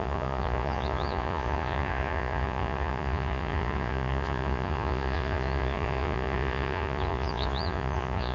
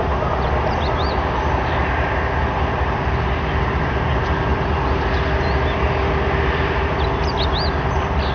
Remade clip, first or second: first